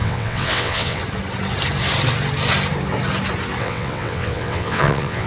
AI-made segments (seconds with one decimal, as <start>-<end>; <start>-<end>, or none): 0.0-1.0; 3.6-5.3